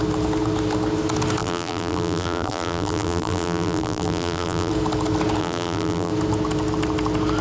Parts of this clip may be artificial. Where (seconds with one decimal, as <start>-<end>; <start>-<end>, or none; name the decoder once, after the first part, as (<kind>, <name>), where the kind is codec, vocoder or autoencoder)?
1.4-4.7 (vocoder, BigVGAN v2); 5.4-6.1